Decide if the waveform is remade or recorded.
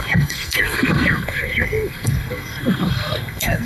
remade